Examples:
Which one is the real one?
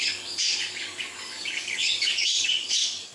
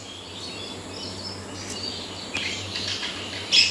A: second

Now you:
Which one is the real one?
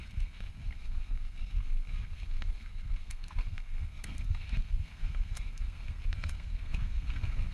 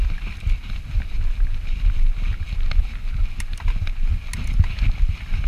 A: second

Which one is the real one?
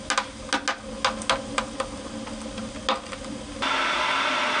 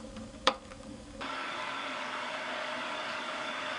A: first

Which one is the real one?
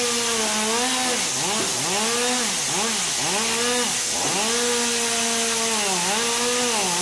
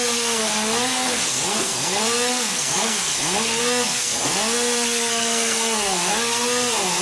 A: first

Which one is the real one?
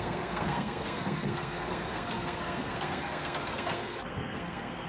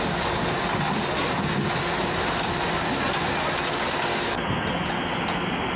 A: second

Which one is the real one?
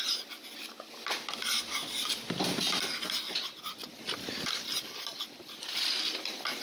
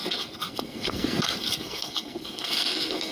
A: first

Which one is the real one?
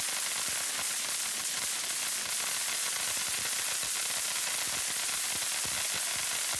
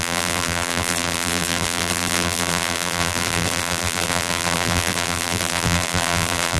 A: first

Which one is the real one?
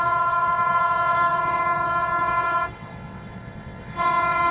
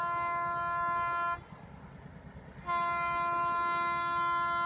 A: second